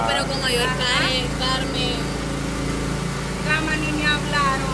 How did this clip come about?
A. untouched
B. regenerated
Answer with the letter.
A